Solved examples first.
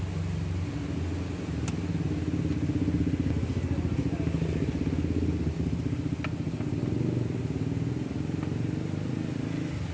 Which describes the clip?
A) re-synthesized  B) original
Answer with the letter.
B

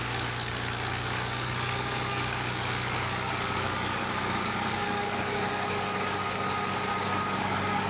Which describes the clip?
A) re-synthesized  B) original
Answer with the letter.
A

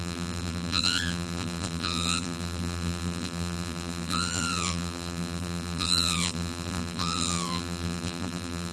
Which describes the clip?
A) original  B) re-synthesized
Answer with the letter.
B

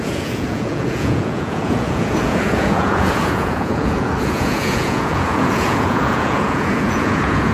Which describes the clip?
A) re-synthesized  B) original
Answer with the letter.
A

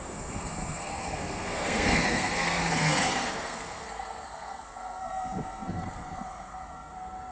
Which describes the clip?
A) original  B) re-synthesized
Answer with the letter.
B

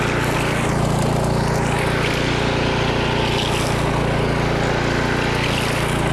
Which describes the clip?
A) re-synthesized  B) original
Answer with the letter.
B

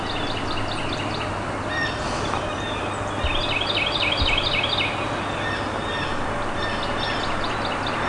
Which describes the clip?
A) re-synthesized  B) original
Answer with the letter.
B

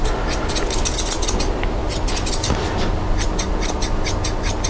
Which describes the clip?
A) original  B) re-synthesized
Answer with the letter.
A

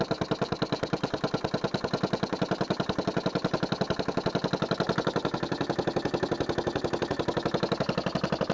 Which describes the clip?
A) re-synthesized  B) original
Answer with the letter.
B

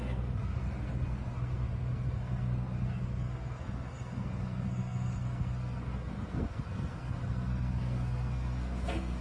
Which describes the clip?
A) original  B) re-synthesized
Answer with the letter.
B